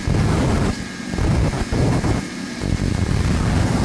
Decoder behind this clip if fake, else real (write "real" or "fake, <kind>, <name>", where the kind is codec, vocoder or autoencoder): real